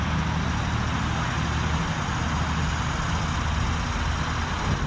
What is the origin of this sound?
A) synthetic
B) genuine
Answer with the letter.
B